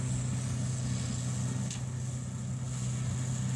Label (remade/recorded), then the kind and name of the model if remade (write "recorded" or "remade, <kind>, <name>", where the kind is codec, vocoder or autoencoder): recorded